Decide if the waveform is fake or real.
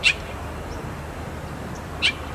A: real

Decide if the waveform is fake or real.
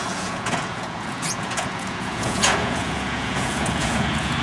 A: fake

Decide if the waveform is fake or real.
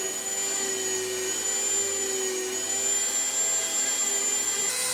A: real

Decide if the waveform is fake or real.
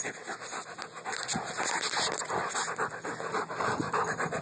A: real